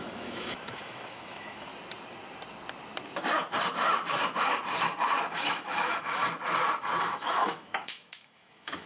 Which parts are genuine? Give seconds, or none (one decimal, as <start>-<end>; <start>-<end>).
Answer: 1.7-5.3; 6.2-7.0